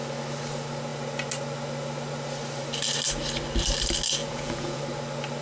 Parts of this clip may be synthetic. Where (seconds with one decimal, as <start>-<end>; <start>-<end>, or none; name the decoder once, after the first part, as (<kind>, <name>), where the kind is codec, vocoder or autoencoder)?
4.2-4.8 (vocoder, Vocos)